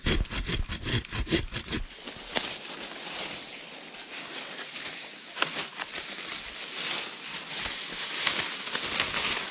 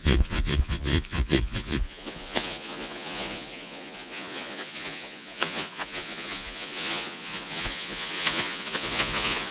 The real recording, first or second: first